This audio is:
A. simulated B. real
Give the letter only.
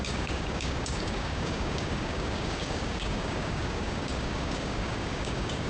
A